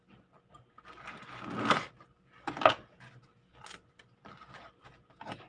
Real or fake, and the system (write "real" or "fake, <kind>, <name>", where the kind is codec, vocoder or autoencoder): real